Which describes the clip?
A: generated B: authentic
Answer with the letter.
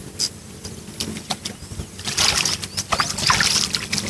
B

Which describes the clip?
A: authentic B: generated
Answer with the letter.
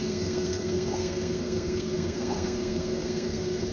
B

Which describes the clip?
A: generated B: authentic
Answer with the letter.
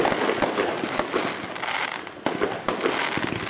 B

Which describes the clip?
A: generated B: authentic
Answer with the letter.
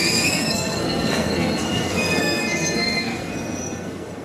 A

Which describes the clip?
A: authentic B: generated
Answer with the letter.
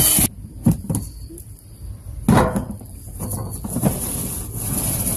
A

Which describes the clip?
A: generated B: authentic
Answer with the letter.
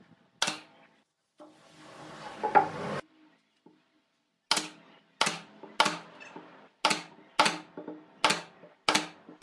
B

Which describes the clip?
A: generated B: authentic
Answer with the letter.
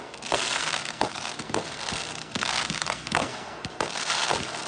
A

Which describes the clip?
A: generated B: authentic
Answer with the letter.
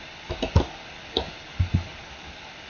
B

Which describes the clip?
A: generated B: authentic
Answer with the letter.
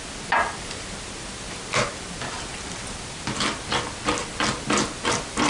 B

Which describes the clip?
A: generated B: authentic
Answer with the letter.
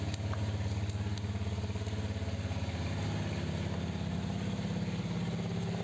B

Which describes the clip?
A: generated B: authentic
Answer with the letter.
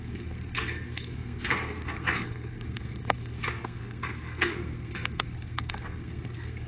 A